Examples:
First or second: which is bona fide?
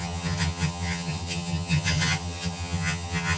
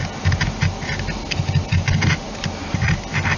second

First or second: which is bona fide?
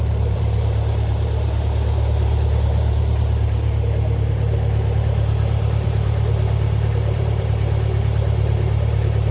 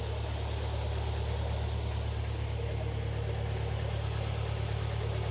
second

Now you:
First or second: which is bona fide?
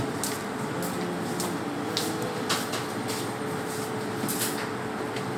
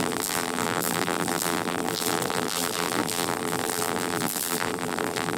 first